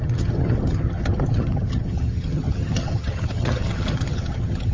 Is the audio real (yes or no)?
no